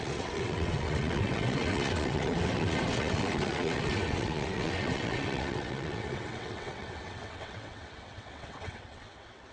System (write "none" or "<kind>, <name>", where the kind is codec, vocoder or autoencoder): vocoder, WaveNeXt